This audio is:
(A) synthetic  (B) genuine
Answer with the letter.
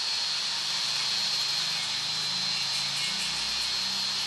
B